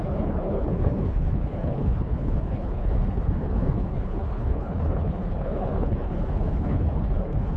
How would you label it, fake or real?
fake